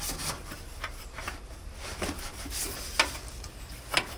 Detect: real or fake real